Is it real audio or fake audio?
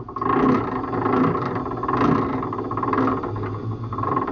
real